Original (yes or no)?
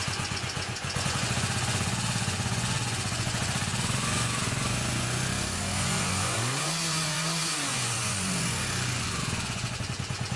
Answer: no